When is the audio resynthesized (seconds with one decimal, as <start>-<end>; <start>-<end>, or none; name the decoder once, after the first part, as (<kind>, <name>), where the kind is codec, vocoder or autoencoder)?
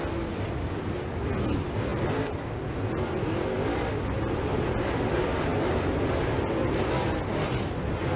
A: 1.9-2.8 (vocoder, BigVGAN v2)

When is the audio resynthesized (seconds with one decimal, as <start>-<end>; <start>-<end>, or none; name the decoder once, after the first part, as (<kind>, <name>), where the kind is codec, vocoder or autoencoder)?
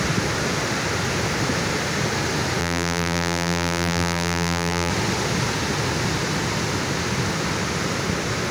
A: 2.6-4.9 (vocoder, BigVGAN v2)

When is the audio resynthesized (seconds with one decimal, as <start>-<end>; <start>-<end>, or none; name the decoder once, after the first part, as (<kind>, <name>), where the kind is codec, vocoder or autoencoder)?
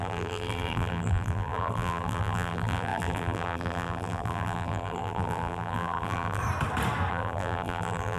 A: 0.0-6.4 (vocoder, BigVGAN v2); 7.1-8.2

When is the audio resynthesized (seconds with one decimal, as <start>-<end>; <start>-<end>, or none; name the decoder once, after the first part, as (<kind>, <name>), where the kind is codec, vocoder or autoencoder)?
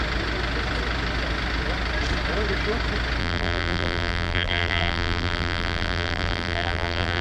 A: 3.2-7.2 (vocoder, BigVGAN v2)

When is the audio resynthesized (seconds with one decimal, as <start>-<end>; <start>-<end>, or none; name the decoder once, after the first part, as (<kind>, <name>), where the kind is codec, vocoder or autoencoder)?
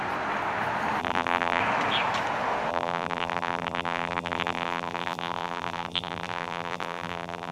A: 1.0-1.6 (vocoder, BigVGAN v2); 2.7-7.5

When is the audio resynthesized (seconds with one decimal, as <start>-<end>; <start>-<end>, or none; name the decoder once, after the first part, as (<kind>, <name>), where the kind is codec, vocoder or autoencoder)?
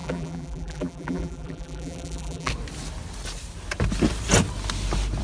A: 0.0-2.5 (vocoder, BigVGAN v2)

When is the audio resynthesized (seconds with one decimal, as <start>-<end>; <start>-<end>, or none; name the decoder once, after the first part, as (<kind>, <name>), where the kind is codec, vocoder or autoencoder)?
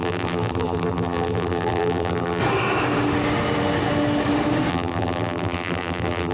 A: 0.0-2.4 (vocoder, BigVGAN v2); 4.7-6.3